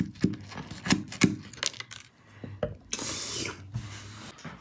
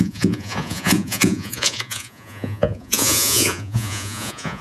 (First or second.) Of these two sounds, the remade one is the second